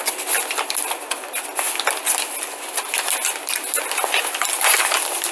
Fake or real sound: real